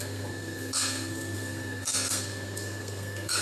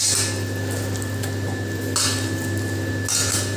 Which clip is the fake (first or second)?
first